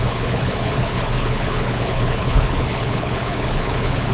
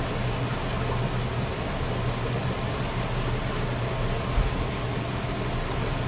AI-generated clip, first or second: first